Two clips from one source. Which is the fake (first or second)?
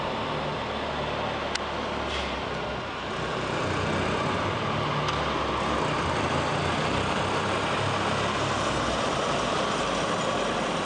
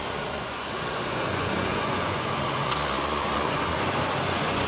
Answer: second